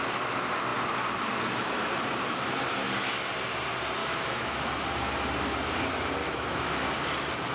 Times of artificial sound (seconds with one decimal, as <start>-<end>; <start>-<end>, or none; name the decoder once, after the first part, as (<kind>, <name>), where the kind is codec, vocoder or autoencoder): 4.0-4.8 (autoencoder, DAC-VAE); 6.2-6.7